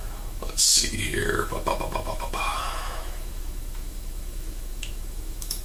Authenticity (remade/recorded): remade